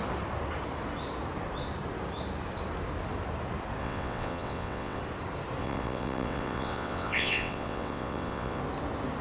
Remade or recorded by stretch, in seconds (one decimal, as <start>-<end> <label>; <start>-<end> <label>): 0.0-3.8 recorded; 3.8-5.0 remade; 5.0-5.6 recorded; 5.6-8.6 remade; 8.6-9.2 recorded

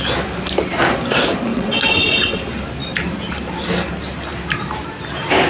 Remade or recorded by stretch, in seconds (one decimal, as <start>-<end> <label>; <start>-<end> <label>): 0.0-1.5 recorded; 1.5-2.4 remade; 2.4-5.5 recorded

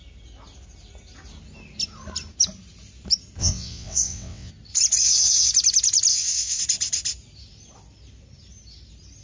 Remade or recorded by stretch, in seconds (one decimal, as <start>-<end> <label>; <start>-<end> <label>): 0.0-3.4 recorded; 3.4-4.5 remade; 4.5-5.0 recorded; 5.0-5.5 remade; 5.5-6.1 recorded; 6.1-6.6 remade; 6.6-9.2 recorded

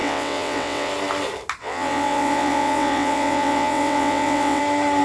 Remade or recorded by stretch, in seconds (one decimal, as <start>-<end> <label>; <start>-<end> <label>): 0.0-0.9 remade; 0.9-1.6 recorded; 1.6-4.6 remade; 4.6-5.0 recorded

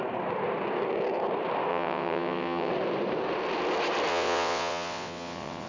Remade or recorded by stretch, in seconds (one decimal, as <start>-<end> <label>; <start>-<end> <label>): 0.0-1.7 recorded; 1.7-2.7 remade; 2.7-4.1 recorded; 4.1-5.7 remade

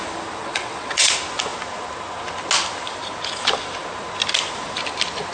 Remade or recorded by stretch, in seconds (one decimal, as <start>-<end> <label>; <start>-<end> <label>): 0.0-0.4 recorded; 0.4-1.1 remade; 1.1-5.3 recorded

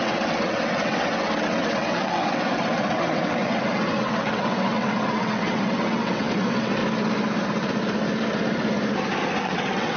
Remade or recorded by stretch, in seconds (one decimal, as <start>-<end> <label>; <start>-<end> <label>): 0.0-6.8 remade; 6.8-9.4 recorded; 9.4-10.0 remade

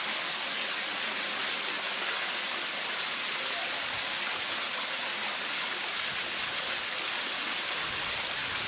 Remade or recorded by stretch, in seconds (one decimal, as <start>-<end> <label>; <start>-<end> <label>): 0.0-8.7 recorded